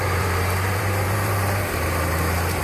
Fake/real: fake